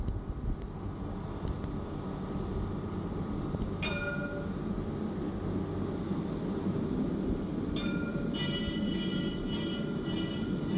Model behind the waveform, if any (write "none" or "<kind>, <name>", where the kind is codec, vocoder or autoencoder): none